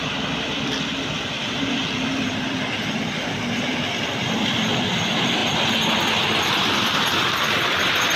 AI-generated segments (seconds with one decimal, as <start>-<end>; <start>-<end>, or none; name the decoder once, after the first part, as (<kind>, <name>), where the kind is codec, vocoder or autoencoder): 0.0-5.4 (vocoder, BigVGAN v2); 6.5-8.2